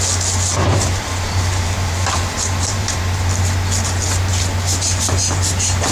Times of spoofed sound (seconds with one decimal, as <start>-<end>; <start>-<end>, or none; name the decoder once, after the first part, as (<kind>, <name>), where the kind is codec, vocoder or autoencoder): 0.7-3.4 (vocoder, BigVGAN v2)